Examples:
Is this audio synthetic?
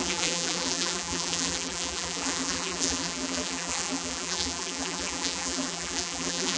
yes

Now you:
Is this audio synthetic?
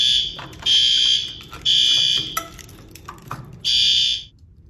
no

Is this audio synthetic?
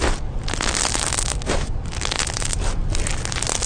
no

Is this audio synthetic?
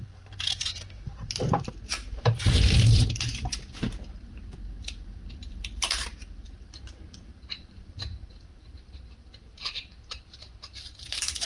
yes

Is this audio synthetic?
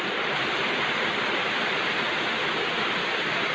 no